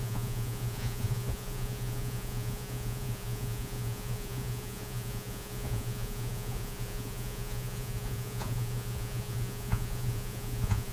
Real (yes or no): no